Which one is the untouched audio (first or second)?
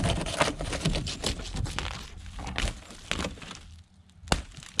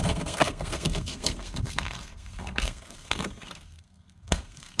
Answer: first